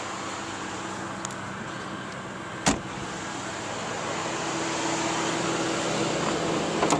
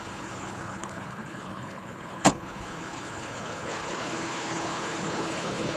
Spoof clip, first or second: second